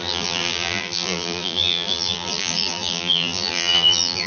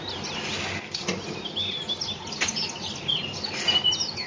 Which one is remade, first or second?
first